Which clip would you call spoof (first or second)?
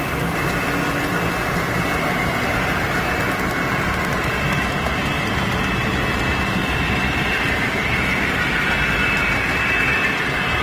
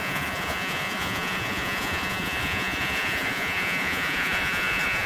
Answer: second